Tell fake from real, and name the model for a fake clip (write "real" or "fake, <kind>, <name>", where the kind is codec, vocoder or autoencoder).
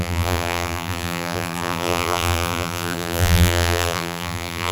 fake, vocoder, BigVGAN v2